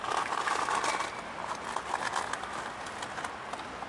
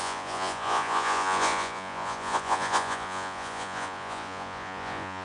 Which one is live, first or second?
first